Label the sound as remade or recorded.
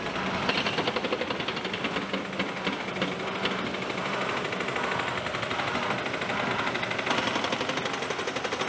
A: recorded